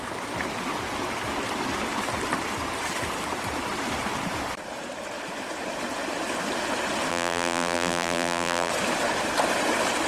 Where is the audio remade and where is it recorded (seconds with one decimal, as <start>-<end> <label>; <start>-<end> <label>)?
0.0-7.1 recorded; 7.1-8.7 remade; 8.7-10.1 recorded